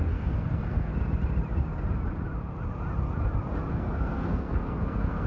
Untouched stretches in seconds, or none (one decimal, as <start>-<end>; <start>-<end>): 0.9-3.7